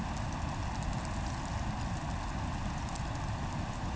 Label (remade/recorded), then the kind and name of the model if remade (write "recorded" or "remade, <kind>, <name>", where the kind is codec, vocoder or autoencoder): recorded